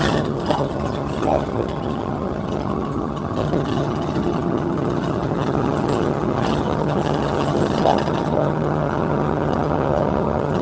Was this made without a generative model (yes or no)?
no